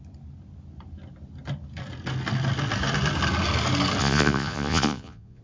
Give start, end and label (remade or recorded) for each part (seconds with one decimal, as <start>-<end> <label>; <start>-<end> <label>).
0.0-4.0 recorded; 4.0-5.4 remade